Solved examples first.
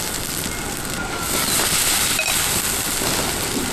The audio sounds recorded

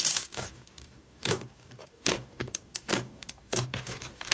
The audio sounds remade